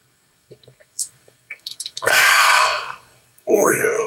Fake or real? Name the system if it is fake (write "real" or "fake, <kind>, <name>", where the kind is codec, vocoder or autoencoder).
fake, codec, SNAC